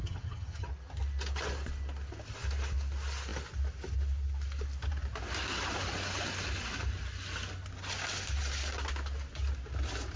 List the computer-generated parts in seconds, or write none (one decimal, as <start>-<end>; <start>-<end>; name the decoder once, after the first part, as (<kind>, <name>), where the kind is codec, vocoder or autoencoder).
0.0-0.7 (vocoder, HiFi-GAN)